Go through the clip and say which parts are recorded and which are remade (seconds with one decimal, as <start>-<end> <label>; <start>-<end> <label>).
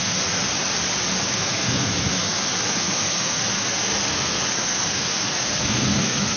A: 0.0-0.5 remade; 0.5-1.3 recorded; 1.3-6.4 remade